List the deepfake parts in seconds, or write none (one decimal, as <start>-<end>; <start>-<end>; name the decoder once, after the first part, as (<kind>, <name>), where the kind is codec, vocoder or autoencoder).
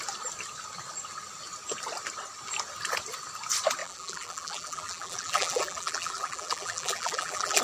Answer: 3.8-7.6 (vocoder, BigVGAN v2)